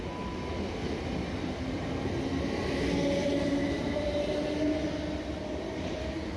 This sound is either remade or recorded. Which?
recorded